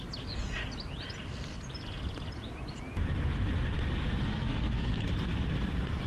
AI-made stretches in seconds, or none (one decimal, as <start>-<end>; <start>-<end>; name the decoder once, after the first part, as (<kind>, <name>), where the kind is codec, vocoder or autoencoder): 4.2-5.0 (codec, SNAC)